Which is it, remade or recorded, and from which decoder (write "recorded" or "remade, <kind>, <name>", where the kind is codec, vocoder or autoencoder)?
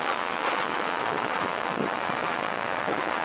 remade, vocoder, Vocos